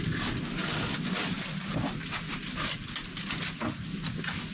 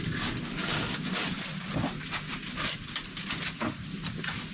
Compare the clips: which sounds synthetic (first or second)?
first